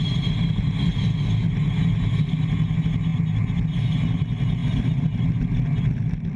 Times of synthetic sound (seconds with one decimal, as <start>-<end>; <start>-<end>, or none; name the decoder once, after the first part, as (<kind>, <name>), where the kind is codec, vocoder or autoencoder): none